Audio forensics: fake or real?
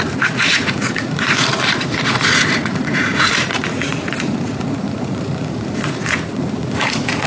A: fake